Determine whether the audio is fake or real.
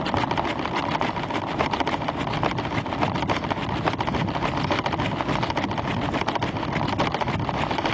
real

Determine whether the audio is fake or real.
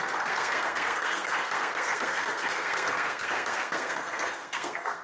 fake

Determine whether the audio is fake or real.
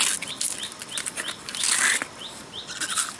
real